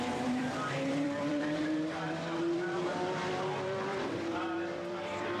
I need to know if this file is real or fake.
fake